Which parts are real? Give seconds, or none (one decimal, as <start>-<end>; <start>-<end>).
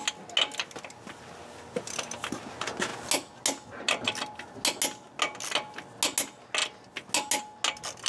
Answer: 0.0-8.1